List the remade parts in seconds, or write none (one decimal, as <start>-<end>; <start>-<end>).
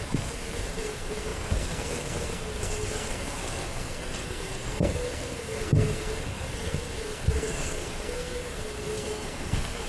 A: 0.0-9.9